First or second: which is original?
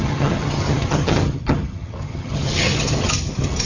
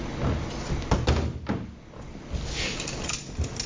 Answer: second